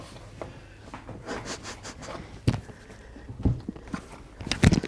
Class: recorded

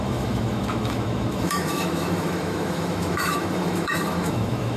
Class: remade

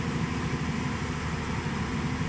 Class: recorded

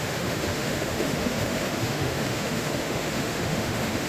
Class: remade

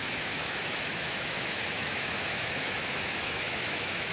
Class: remade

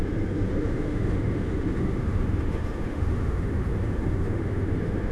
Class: remade